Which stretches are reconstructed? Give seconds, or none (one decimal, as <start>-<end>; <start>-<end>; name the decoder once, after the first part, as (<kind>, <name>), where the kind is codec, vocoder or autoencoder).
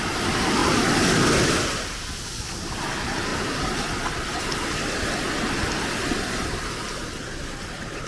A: none